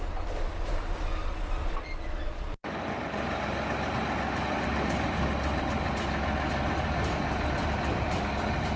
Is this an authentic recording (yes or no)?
yes